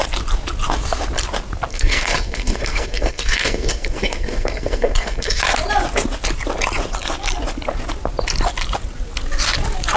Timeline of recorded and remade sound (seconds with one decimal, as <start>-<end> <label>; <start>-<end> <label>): 0.0-1.7 recorded; 1.7-5.4 remade; 5.4-10.0 recorded